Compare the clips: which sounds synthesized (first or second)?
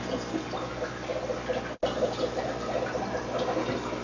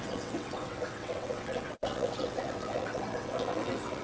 second